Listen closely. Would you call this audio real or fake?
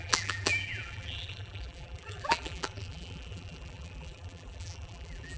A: fake